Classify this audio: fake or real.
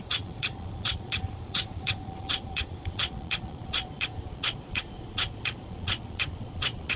fake